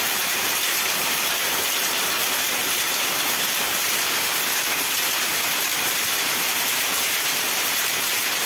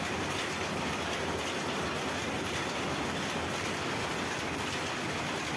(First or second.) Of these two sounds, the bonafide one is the second